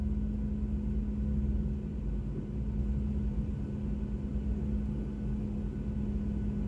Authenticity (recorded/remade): recorded